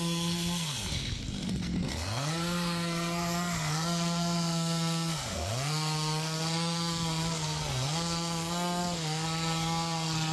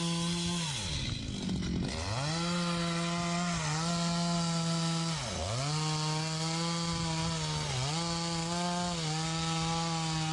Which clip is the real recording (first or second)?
second